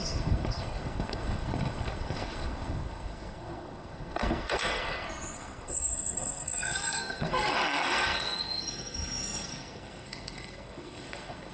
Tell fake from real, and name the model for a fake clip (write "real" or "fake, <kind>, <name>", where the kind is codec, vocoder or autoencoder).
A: fake, codec, SNAC